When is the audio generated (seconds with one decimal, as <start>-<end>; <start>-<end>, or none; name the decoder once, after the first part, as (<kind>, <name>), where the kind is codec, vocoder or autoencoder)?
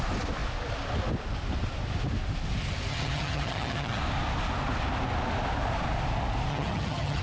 2.9-4.0 (vocoder, HiFi-GAN); 6.5-7.2